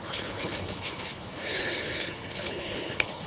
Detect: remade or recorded remade